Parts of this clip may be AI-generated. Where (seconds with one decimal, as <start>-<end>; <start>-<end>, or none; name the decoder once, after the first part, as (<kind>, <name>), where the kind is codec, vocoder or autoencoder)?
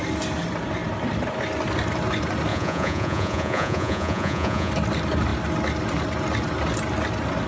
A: 2.5-4.7 (vocoder, Vocos)